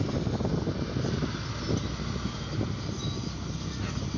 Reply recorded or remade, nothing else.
recorded